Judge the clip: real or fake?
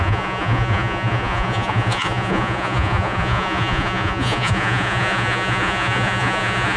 fake